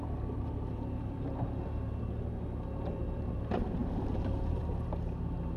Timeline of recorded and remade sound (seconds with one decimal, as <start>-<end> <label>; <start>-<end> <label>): 0.0-5.6 recorded